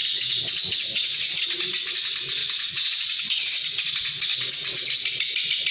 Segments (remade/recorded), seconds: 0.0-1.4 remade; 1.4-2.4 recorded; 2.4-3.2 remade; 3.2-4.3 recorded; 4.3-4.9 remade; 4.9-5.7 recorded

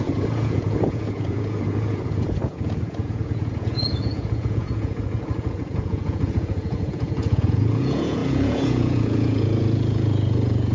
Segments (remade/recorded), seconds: 0.0-10.7 remade

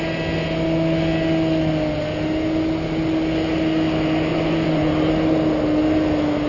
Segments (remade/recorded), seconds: 0.0-4.3 recorded; 4.3-4.9 remade; 4.9-6.5 recorded

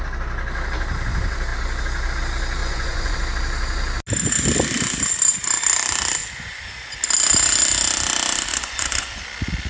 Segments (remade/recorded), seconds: 0.0-2.6 recorded; 2.6-3.2 remade; 3.2-6.2 recorded; 6.2-7.0 remade; 7.0-8.5 recorded; 8.5-9.2 remade; 9.2-9.7 recorded